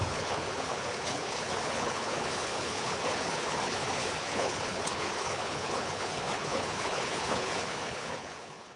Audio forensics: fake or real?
fake